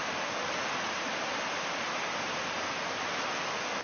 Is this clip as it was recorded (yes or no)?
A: yes